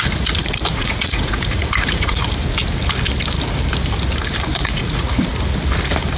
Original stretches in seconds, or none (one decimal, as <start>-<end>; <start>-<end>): 0.0-0.8; 2.2-4.5; 5.3-6.2